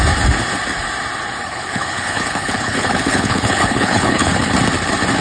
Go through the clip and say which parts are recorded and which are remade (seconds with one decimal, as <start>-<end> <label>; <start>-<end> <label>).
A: 0.0-1.4 recorded; 1.4-4.5 remade; 4.5-5.2 recorded